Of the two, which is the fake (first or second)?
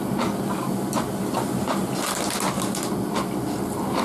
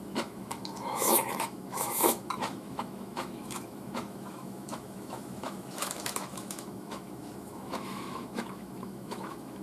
second